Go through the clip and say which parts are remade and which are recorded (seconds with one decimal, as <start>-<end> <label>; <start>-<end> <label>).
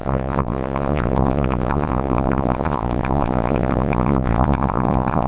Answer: 0.0-5.3 remade